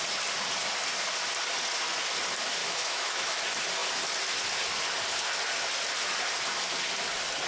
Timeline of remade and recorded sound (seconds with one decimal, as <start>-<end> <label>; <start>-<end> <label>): 0.0-2.6 recorded; 2.6-3.4 remade; 3.4-7.5 recorded